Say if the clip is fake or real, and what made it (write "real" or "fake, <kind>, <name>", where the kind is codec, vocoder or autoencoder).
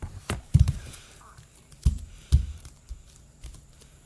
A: fake, vocoder, BigVGAN v2